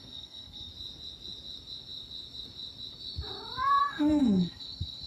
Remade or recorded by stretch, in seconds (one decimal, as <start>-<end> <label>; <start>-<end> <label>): 0.0-0.7 remade; 0.7-3.8 recorded; 3.8-5.1 remade